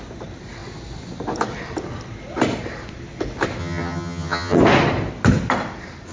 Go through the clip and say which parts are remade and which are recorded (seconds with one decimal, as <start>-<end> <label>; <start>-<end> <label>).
0.0-3.6 recorded; 3.6-4.6 remade; 4.6-6.1 recorded